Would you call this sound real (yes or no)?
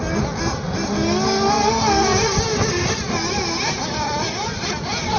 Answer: yes